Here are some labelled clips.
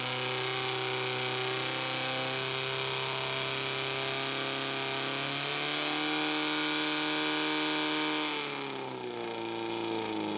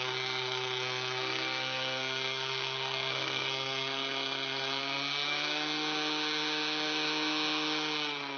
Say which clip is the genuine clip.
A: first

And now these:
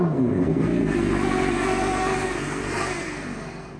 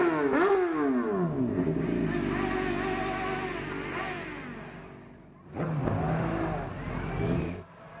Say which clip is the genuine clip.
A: second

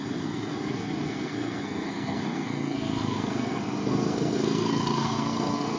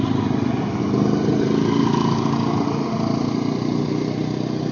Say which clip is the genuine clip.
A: second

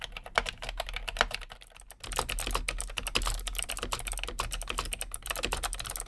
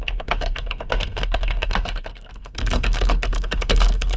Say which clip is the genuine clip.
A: first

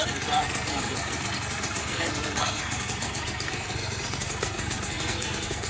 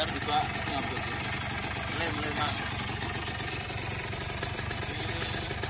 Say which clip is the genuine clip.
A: second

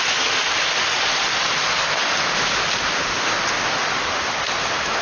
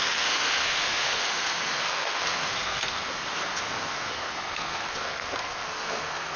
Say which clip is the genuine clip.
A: first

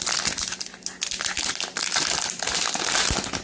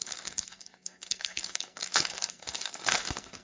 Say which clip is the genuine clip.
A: first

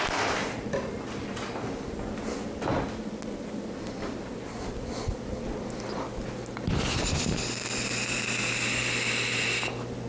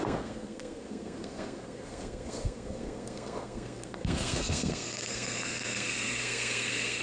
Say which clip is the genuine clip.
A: first